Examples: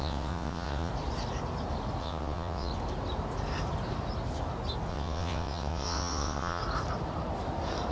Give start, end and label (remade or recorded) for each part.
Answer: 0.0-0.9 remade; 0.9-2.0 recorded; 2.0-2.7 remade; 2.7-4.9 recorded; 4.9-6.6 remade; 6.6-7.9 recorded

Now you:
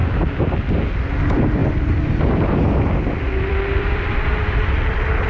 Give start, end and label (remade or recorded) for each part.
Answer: 0.0-1.6 recorded; 1.6-4.8 remade; 4.8-5.3 recorded

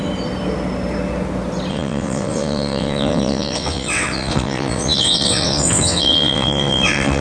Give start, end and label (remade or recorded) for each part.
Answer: 0.0-1.7 recorded; 1.7-7.2 remade